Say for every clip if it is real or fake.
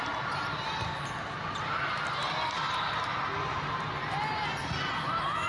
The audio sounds real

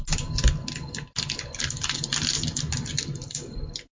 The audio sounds real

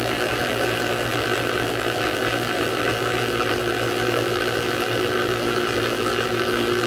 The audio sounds fake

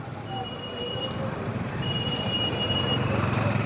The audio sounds fake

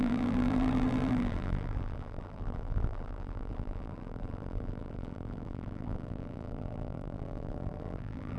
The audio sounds fake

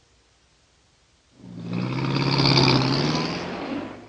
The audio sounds real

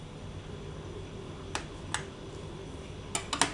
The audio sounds real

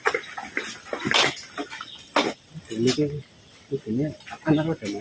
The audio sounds real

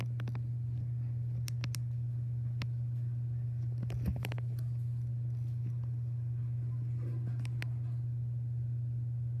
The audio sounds real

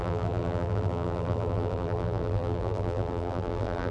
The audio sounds fake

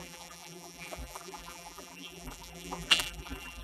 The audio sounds fake